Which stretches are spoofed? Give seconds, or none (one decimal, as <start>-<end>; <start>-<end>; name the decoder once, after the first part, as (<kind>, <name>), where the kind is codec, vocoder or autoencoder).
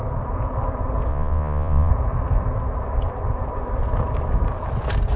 1.1-1.9 (vocoder, Vocos)